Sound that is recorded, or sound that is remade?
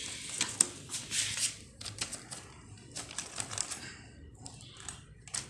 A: remade